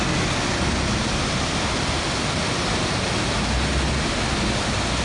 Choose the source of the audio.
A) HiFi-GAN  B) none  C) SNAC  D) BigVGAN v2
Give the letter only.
B